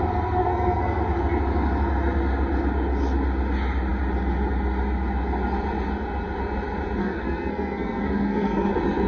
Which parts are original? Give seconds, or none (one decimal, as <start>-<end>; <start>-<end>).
0.0-0.4; 1.0-7.0; 8.7-9.1